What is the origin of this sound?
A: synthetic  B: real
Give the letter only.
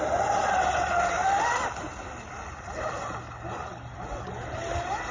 B